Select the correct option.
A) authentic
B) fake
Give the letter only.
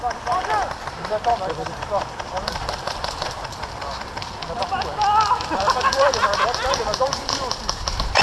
B